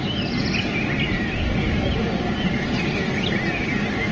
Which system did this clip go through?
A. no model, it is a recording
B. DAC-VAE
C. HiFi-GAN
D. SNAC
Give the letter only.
A